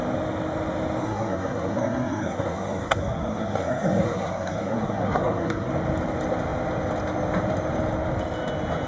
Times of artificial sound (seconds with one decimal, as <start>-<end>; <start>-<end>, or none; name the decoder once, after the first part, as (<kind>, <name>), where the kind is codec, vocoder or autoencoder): 1.0-5.7 (codec, SNAC)